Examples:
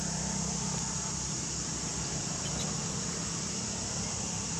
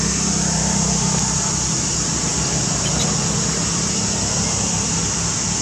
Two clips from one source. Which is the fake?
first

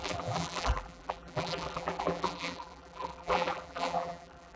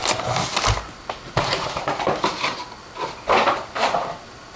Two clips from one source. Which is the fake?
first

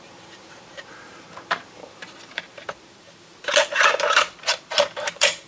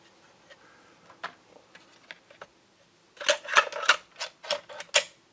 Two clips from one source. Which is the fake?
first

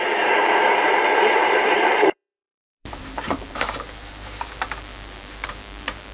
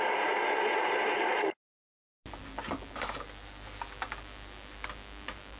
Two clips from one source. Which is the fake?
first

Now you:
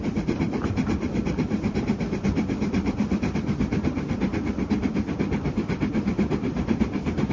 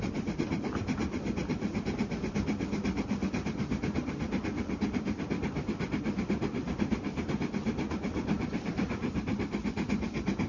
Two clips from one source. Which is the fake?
first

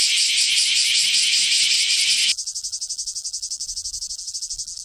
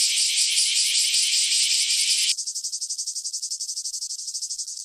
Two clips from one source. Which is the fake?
second